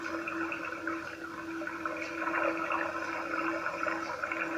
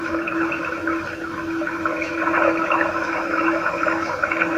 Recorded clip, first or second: first